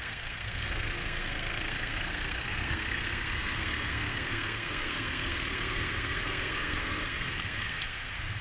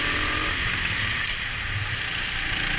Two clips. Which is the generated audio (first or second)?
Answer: first